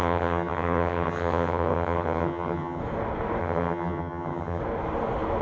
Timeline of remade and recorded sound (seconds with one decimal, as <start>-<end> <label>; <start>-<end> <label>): 0.0-2.8 remade; 2.8-3.4 recorded; 3.4-4.6 remade; 4.6-5.4 recorded

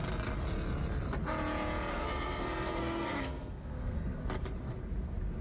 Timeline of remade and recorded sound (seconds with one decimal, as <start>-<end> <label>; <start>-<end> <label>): 0.0-1.9 recorded; 1.9-4.2 remade; 4.2-5.4 recorded

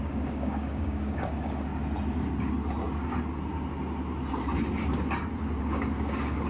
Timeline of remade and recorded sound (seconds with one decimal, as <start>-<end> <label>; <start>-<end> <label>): 0.0-1.7 remade; 1.7-5.6 recorded; 5.6-6.5 remade

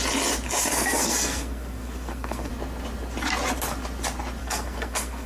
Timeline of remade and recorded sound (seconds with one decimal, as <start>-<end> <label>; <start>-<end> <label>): 0.0-0.7 recorded; 0.7-2.5 remade; 2.5-4.4 recorded; 4.4-5.3 remade

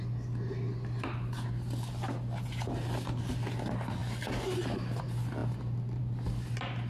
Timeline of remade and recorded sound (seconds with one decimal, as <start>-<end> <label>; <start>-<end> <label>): 0.0-4.0 recorded; 4.0-5.0 remade; 5.0-6.9 recorded

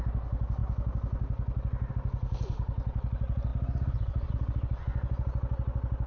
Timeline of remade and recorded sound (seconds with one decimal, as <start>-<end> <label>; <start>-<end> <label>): 0.0-6.1 recorded